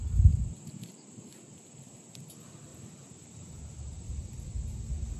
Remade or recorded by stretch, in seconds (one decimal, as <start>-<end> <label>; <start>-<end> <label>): 0.0-2.7 recorded; 2.7-3.6 remade; 3.6-5.2 recorded